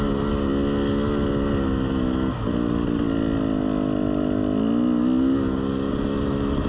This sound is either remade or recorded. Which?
recorded